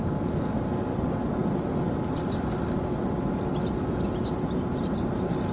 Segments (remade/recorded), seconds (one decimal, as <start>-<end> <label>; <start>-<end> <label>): 0.0-5.5 recorded